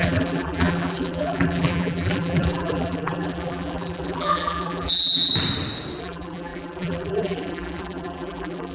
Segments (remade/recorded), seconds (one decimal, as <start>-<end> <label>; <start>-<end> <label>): 0.0-5.3 remade; 5.3-6.0 recorded; 6.0-8.7 remade